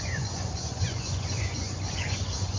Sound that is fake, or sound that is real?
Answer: fake